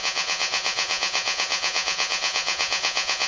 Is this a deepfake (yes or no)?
yes